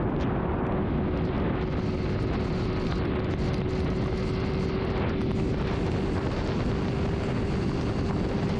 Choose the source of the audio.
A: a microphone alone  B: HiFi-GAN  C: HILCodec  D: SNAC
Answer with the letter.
A